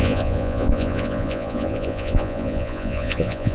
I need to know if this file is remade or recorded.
remade